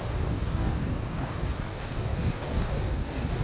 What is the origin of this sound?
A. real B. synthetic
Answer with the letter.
B